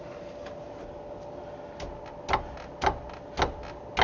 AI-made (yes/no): no